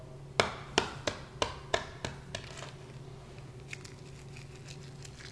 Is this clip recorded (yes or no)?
yes